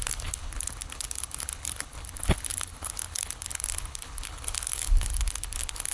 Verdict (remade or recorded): remade